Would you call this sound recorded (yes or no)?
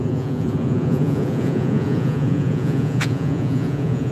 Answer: no